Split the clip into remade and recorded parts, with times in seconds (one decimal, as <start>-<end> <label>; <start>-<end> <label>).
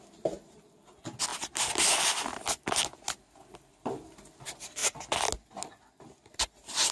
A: 0.0-6.9 recorded